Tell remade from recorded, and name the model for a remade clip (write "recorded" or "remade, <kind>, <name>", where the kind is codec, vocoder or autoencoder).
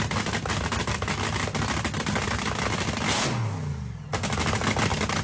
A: recorded